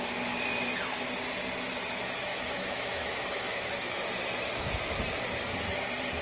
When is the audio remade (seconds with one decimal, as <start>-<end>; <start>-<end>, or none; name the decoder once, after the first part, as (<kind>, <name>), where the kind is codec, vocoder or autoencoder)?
2.3-4.1 (autoencoder, DAC-VAE)